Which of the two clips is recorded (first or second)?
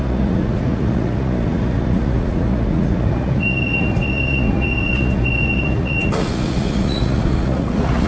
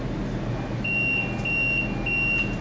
second